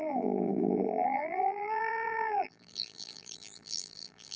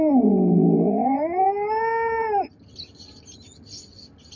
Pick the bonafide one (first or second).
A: second